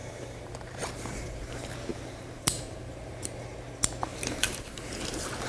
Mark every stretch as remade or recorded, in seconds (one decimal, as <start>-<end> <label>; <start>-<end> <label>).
0.0-1.2 remade; 1.2-1.9 recorded; 1.9-3.4 remade; 3.4-4.1 recorded; 4.1-5.0 remade; 5.0-5.5 recorded